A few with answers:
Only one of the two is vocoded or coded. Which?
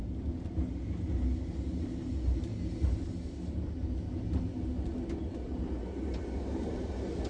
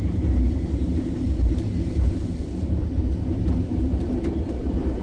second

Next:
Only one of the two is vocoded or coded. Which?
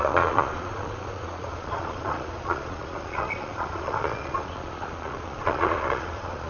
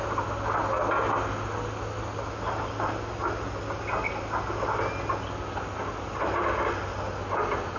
first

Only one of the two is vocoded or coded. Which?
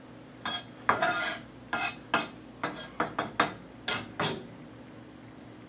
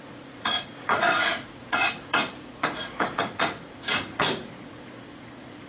second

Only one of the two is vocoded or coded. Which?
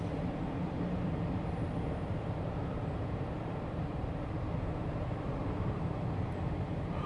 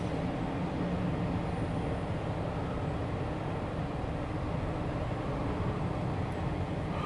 first